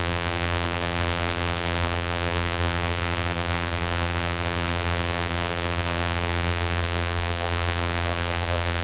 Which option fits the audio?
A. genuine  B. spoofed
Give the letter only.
B